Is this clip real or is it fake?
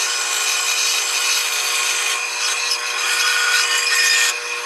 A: real